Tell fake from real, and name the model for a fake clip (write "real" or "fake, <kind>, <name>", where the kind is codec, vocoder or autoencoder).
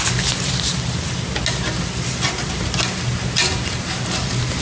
real